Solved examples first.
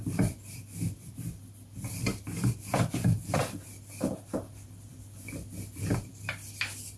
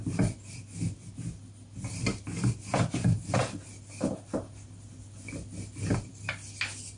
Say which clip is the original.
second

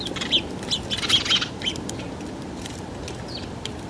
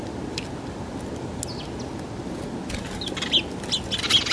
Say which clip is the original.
second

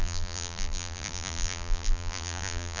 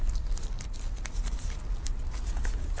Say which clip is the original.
second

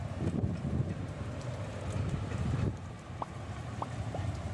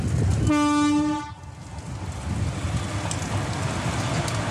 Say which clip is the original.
second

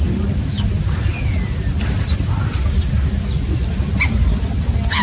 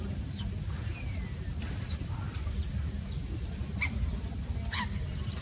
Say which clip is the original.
first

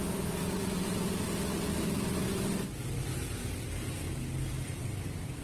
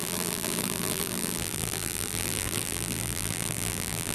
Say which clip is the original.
first